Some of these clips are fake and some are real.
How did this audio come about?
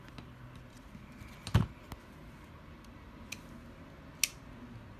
real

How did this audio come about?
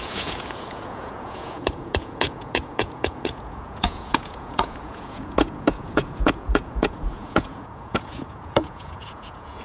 fake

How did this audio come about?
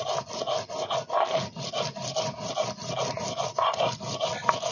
real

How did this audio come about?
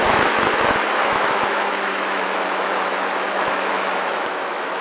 fake